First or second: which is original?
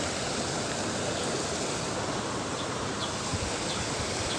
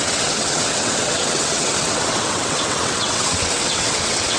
first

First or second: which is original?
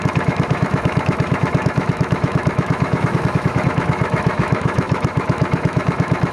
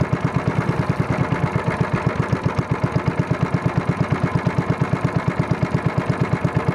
second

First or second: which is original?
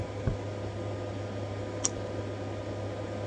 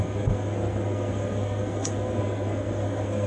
first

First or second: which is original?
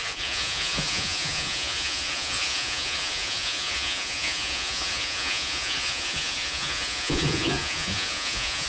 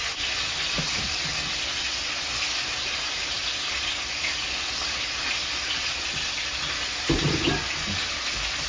second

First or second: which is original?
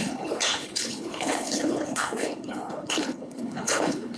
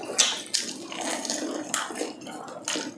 second